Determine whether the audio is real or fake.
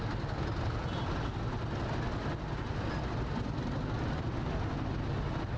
real